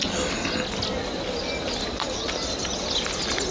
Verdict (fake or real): real